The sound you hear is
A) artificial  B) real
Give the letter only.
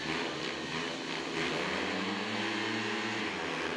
B